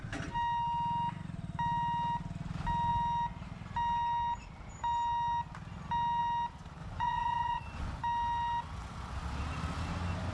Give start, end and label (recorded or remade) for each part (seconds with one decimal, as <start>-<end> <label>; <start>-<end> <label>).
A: 0.0-6.8 recorded; 6.8-8.0 remade; 8.0-10.3 recorded